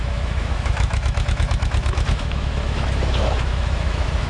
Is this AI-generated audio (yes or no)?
yes